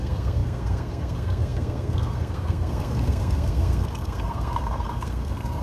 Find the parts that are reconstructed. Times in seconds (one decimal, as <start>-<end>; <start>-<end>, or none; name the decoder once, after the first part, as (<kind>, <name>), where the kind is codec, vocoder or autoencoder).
0.0-5.6 (codec, SNAC)